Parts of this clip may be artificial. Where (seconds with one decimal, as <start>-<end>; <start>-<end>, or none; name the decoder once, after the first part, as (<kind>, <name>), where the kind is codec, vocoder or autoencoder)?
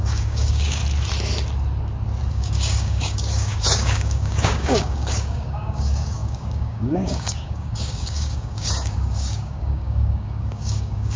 0.0-0.8 (codec, DAC); 2.3-11.2